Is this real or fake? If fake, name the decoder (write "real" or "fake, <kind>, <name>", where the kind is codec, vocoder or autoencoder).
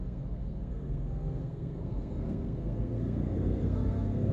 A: fake, codec, SNAC